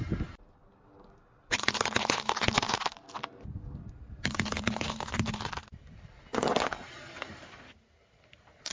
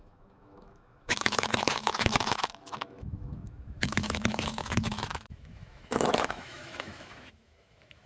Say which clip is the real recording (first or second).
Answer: first